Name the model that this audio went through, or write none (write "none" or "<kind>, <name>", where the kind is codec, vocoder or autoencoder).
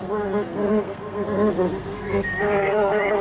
codec, SNAC